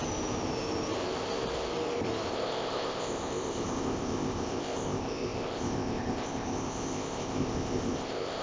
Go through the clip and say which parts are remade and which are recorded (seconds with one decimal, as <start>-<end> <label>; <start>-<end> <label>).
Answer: 0.0-2.3 recorded; 2.3-8.4 remade